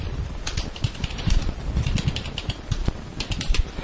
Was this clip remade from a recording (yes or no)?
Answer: yes